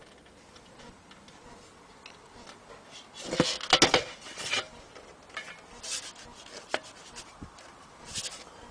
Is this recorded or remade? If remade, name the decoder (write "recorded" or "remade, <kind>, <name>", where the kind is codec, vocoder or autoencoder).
recorded